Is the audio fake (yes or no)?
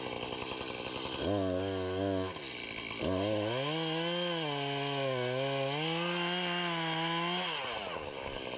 no